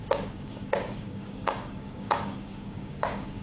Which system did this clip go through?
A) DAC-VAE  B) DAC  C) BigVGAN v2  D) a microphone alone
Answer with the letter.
B